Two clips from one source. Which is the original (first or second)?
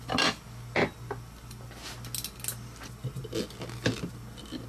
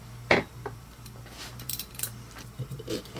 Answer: first